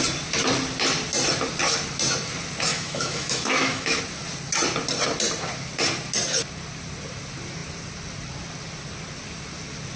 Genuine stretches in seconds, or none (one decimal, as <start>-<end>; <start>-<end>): 0.0-2.7; 4.0-10.0